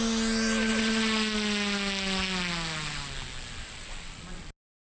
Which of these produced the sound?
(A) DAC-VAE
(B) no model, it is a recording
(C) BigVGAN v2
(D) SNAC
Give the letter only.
B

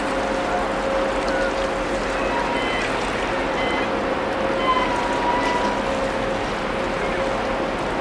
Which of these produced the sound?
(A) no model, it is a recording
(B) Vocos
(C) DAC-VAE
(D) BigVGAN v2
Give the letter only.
A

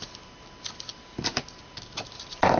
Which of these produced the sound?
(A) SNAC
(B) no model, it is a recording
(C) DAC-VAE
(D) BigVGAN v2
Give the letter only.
B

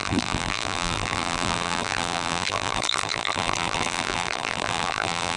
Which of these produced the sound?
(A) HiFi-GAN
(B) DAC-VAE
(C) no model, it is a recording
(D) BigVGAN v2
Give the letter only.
D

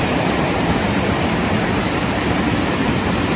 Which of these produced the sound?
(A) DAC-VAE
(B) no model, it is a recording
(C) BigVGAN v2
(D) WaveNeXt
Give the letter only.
C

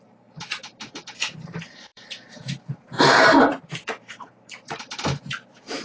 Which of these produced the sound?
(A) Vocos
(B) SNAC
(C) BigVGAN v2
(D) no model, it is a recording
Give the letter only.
C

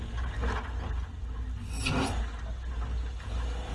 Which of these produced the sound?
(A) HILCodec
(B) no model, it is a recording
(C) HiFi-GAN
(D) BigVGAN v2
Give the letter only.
B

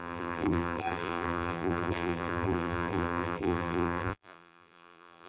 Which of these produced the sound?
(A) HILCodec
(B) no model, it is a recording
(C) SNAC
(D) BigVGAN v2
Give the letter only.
D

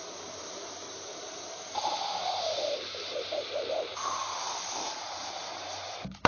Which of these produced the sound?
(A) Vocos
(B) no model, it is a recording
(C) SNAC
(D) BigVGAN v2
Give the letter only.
D